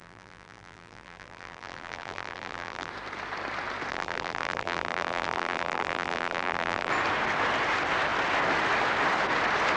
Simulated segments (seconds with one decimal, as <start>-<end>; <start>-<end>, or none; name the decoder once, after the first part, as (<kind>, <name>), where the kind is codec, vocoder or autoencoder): 0.0-2.9 (vocoder, BigVGAN v2); 3.9-6.9